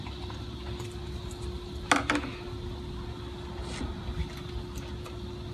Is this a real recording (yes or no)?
yes